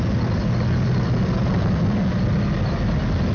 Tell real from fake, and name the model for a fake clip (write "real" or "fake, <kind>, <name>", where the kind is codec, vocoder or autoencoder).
real